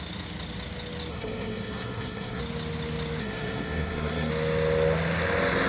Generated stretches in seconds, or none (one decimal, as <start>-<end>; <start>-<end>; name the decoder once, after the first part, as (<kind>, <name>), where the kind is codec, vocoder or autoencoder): 1.1-2.4 (codec, SNAC); 3.2-4.3